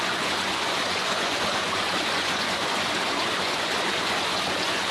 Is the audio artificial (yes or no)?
yes